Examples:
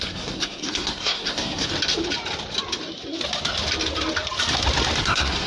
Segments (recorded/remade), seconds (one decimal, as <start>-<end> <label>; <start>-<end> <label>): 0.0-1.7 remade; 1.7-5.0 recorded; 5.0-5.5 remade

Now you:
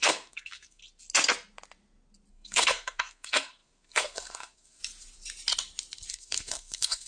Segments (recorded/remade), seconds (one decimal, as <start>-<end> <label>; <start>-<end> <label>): 0.0-0.8 remade; 0.8-2.3 recorded; 2.3-4.8 remade; 4.8-6.1 recorded; 6.1-7.1 remade

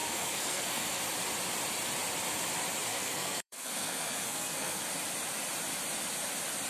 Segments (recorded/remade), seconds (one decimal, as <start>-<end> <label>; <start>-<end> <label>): 0.0-1.0 remade; 1.0-2.9 recorded; 2.9-4.8 remade; 4.8-6.7 recorded

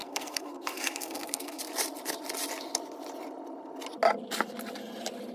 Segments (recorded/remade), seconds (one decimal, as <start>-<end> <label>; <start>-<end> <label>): 0.0-1.6 remade; 1.6-5.3 recorded